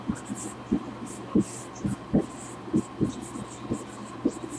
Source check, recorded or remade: remade